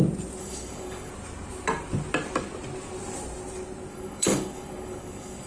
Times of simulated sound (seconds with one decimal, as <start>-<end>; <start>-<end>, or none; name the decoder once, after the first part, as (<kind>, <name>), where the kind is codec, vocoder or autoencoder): 0.4-1.1 (codec, DAC); 3.9-5.5